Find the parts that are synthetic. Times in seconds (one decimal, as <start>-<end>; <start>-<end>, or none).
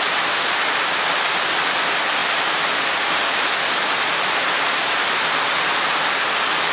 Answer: none